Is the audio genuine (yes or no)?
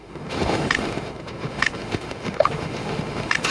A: no